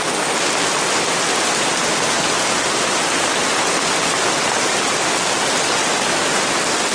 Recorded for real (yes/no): yes